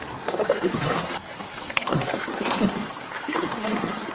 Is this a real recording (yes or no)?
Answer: no